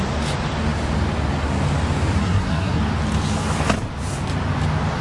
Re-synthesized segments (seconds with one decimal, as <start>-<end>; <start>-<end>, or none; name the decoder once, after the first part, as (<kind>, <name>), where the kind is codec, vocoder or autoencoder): 2.2-2.8 (codec, SNAC)